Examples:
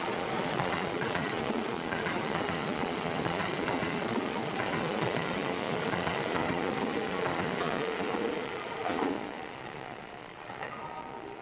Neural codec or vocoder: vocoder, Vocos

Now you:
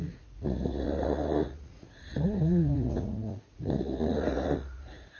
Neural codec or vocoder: vocoder, Vocos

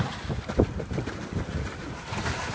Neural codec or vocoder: none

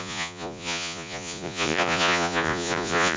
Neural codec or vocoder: vocoder, Vocos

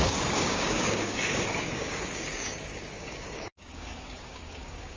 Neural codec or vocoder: codec, DAC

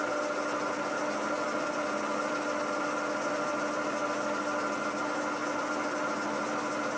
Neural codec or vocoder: none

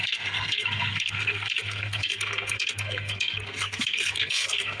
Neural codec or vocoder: codec, SNAC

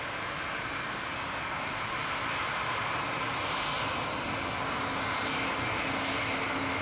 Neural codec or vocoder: none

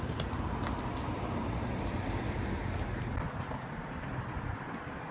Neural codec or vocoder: none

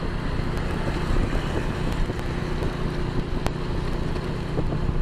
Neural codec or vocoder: none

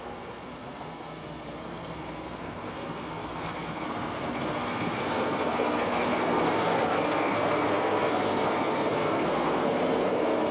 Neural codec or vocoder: codec, SNAC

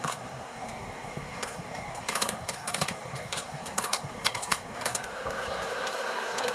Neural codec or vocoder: codec, SNAC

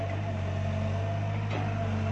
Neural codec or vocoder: none